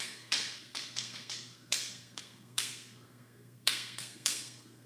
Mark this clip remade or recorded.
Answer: remade